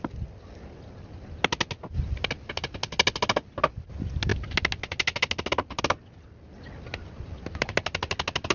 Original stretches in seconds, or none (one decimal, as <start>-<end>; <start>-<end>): 0.0-8.5